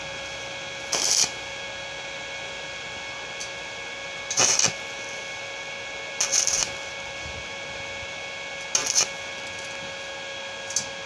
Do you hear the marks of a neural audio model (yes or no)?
yes